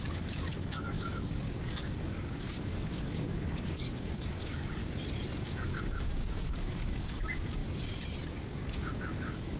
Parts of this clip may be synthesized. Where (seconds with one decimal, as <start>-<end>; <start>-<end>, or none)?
0.0-4.8; 5.4-7.6; 8.3-9.6